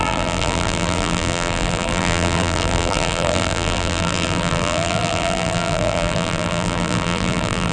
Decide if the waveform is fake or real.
fake